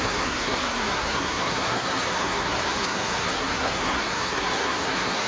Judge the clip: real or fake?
fake